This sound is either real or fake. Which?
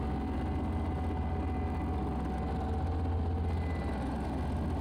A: real